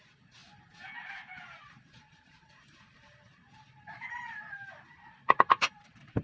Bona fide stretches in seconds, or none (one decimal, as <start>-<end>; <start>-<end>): none

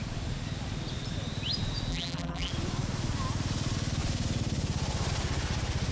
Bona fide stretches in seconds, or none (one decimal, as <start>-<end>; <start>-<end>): 0.0-1.9; 2.5-5.9

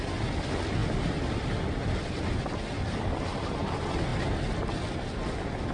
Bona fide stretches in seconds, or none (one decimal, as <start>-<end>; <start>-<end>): 0.0-5.7

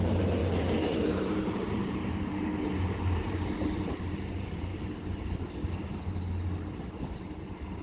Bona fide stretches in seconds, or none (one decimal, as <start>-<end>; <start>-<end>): 4.7-7.2

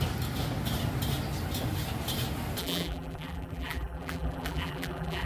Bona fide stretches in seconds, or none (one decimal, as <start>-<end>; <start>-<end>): 0.0-2.6

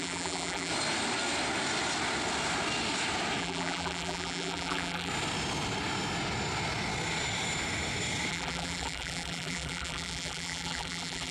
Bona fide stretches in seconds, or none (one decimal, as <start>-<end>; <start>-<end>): 0.7-3.4; 5.1-8.3

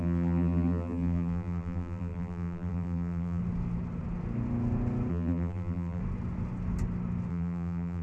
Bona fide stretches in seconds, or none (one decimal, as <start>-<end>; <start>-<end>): 3.4-5.1; 6.0-7.3